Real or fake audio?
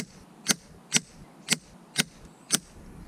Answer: real